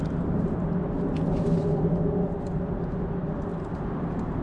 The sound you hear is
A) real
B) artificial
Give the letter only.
A